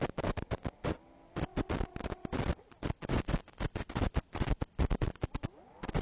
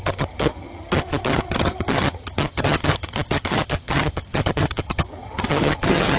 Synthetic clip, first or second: second